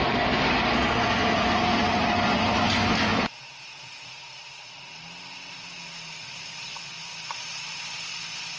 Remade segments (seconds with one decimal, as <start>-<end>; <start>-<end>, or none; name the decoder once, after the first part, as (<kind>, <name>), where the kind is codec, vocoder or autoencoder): 3.1-4.2 (vocoder, Vocos)